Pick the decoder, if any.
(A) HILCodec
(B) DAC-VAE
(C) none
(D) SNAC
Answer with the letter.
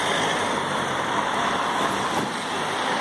C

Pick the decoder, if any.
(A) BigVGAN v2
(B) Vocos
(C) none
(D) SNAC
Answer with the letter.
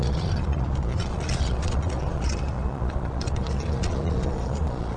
B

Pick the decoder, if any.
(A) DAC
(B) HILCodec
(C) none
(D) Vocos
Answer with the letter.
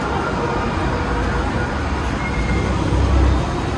C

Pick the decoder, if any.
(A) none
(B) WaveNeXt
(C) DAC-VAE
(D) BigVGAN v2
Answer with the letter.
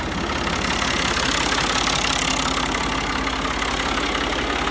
A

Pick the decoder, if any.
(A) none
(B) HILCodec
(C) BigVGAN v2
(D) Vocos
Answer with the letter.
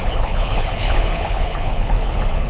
B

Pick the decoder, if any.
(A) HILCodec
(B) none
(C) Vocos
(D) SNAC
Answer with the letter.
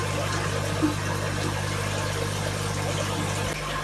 B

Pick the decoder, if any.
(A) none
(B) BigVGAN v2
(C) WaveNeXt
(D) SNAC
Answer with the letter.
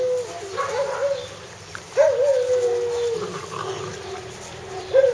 A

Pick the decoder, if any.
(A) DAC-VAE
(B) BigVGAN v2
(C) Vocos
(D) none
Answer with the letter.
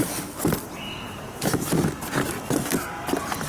D